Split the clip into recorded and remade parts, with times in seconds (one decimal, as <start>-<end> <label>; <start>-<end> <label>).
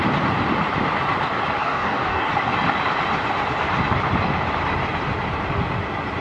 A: 0.0-1.6 recorded; 1.6-2.3 remade; 2.3-6.2 recorded